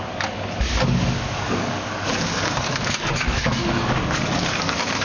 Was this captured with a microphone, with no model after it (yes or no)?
no